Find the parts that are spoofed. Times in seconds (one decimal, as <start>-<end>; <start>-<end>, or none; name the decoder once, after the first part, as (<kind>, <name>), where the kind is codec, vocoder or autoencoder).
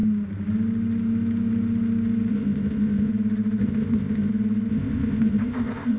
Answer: 2.3-3.1 (codec, ZipCodec); 3.6-4.3; 4.7-6.0